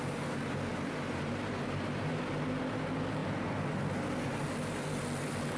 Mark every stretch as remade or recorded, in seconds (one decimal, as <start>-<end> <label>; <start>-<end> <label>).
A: 0.0-5.6 recorded